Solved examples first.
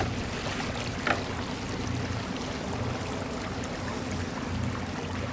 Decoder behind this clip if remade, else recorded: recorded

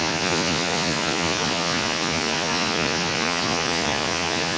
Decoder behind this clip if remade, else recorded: remade, vocoder, Vocos